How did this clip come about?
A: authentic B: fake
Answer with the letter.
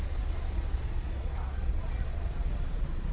B